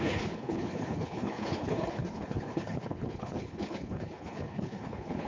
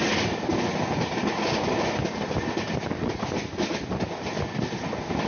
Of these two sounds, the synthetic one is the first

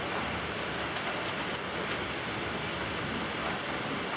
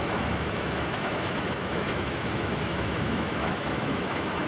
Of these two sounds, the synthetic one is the second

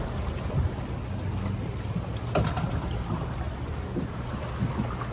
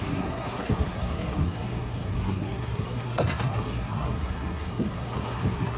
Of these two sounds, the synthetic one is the second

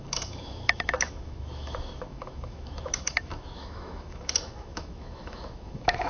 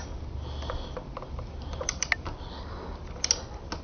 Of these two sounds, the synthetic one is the first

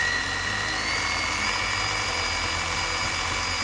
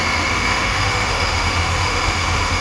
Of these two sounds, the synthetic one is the second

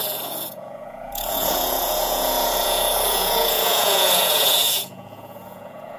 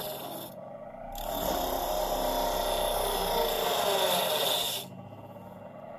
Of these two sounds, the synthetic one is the first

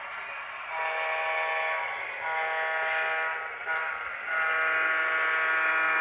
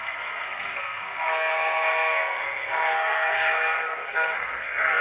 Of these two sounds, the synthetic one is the second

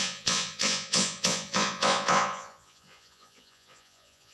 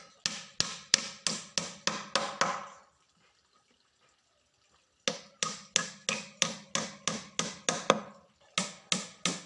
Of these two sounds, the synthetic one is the first